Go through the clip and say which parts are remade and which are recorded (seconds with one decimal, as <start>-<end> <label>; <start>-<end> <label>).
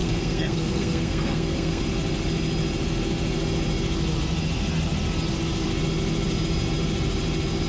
0.0-1.8 remade; 1.8-7.7 recorded